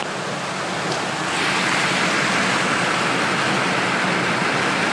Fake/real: real